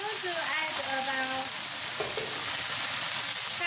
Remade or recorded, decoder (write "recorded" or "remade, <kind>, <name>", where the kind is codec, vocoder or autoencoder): recorded